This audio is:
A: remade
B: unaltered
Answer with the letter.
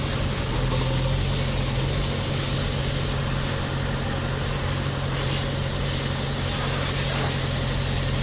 B